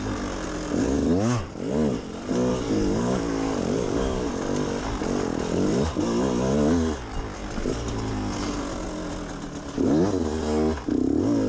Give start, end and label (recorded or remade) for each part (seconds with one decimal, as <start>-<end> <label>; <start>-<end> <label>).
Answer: 0.0-2.5 recorded; 2.5-4.3 remade; 4.3-11.5 recorded